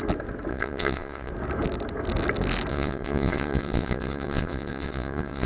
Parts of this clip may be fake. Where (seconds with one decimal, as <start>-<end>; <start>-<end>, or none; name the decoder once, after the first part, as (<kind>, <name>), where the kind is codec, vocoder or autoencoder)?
0.5-1.3 (vocoder, WaveNeXt); 2.7-5.5